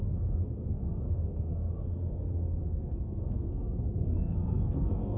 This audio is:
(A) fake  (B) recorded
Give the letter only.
A